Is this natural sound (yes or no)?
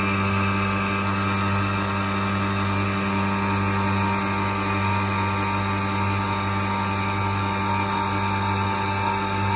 yes